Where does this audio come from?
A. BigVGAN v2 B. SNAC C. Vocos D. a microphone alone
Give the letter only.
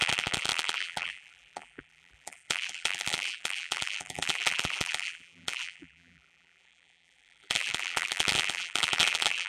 A